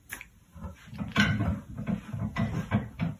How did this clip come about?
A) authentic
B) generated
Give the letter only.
A